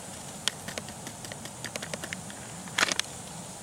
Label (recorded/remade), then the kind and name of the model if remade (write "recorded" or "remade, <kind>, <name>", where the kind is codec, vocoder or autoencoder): recorded